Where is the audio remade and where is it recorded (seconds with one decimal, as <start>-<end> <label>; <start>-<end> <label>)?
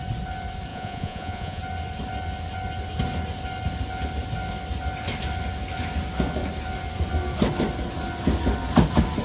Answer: 0.0-0.7 recorded; 0.7-1.6 remade; 1.6-9.2 recorded